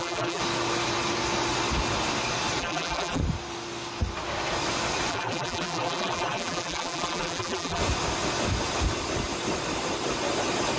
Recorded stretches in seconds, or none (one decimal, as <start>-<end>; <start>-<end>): 0.4-2.6; 3.2-5.1; 7.8-10.8